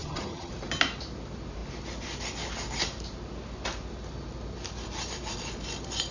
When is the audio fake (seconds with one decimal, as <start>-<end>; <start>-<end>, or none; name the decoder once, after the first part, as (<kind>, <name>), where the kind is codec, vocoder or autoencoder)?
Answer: 0.0-0.5 (vocoder, HiFi-GAN)